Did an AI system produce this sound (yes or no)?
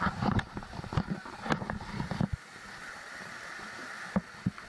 no